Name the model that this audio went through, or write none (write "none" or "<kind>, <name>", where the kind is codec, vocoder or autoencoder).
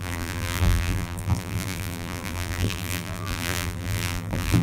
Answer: vocoder, BigVGAN v2